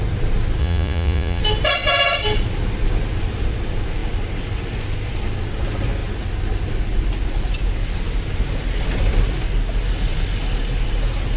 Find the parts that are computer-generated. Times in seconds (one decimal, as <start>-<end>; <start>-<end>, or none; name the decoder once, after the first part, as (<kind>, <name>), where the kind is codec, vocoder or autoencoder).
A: 0.6-1.4 (vocoder, Vocos)